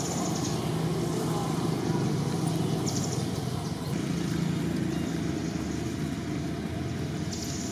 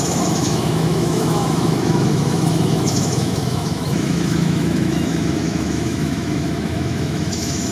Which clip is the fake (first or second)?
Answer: second